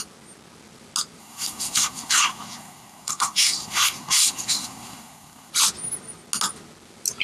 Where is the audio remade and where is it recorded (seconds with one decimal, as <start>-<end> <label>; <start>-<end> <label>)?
0.0-1.2 recorded; 1.2-5.5 remade; 5.5-7.2 recorded